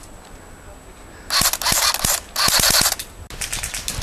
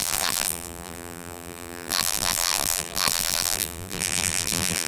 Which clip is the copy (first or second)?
second